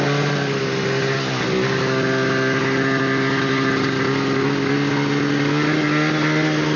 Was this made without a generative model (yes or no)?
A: yes